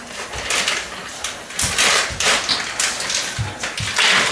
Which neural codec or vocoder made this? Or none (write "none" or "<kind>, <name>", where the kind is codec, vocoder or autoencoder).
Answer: none